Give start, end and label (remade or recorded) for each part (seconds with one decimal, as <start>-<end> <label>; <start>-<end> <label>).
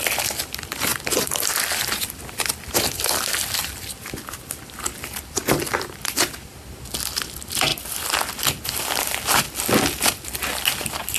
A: 0.0-0.9 recorded; 0.9-4.4 remade; 4.4-7.7 recorded; 7.7-8.3 remade; 8.3-11.2 recorded